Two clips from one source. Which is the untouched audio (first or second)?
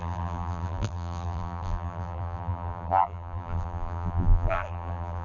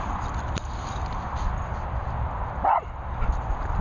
second